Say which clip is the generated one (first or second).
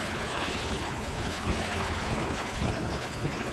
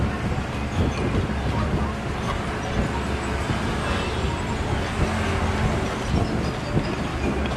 first